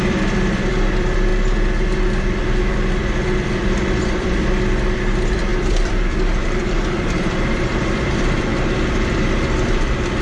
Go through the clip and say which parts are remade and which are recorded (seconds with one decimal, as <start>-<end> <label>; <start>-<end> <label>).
0.0-8.5 remade; 8.5-9.1 recorded; 9.1-10.2 remade